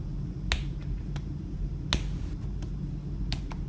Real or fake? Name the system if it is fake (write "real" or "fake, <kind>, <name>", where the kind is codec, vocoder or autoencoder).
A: real